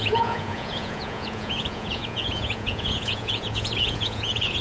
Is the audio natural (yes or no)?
no